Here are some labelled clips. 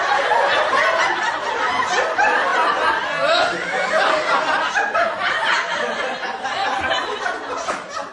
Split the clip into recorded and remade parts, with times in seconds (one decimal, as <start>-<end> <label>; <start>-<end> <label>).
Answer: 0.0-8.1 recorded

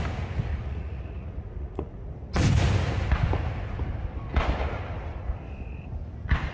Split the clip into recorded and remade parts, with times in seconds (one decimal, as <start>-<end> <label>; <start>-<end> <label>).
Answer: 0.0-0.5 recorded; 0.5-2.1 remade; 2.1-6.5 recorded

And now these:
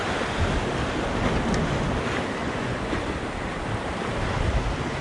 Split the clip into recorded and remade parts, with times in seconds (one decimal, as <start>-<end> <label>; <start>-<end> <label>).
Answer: 0.0-2.4 recorded; 2.4-3.0 remade; 3.0-5.0 recorded

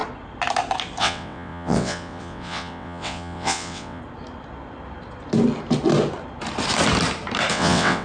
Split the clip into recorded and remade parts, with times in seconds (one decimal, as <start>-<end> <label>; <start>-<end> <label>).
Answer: 0.0-1.0 recorded; 1.0-4.0 remade; 4.0-7.5 recorded; 7.5-8.0 remade

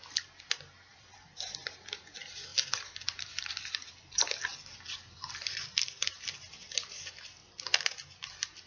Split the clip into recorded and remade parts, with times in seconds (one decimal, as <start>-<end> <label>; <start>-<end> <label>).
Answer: 0.0-0.9 recorded; 0.9-2.0 remade; 2.0-2.5 recorded; 2.5-6.5 remade; 6.5-8.7 recorded

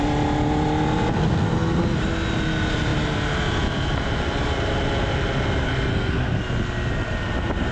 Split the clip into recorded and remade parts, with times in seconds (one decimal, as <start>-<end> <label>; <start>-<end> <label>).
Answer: 0.0-1.1 recorded; 1.1-1.8 remade; 1.8-5.9 recorded; 5.9-6.4 remade; 6.4-7.7 recorded

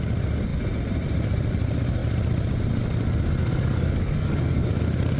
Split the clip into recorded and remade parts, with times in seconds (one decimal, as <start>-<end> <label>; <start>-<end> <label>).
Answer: 0.0-3.4 recorded; 3.4-4.8 remade; 4.8-5.2 recorded

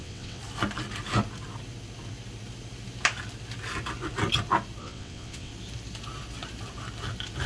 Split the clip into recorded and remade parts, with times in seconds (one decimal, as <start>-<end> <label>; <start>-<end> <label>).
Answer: 0.0-0.4 remade; 0.4-4.8 recorded; 4.8-5.5 remade; 5.5-7.5 recorded